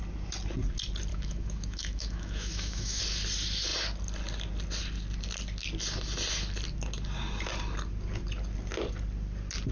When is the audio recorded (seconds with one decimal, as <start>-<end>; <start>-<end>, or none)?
0.0-1.1; 3.0-9.7